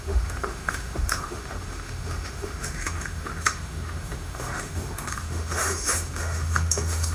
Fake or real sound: fake